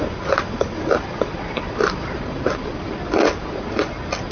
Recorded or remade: recorded